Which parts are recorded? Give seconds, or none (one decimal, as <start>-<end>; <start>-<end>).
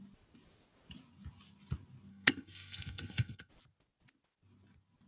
0.0-2.1; 3.5-5.1